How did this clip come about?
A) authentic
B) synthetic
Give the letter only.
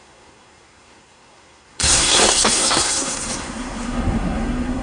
B